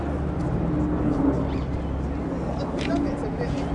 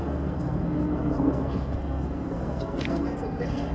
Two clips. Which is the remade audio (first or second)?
second